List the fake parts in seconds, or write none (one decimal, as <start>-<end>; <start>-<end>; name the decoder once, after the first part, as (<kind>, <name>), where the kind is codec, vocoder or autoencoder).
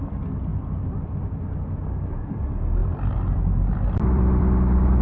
2.8-5.0 (vocoder, BigVGAN v2)